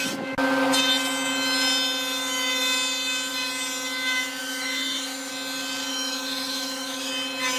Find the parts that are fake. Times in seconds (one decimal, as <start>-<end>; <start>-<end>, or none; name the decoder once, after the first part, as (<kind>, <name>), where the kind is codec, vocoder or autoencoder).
4.4-5.3 (autoencoder, DAC-VAE); 5.9-7.1